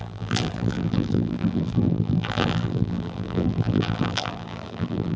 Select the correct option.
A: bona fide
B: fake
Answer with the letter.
B